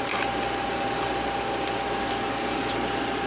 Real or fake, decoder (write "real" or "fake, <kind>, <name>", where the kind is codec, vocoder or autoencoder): real